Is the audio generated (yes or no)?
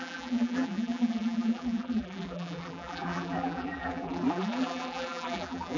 yes